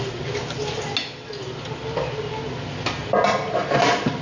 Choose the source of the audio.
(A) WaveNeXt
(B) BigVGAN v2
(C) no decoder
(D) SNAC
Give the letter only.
C